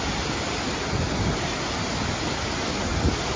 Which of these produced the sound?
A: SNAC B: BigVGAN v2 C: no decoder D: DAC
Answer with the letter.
C